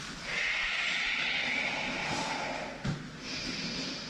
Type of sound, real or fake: real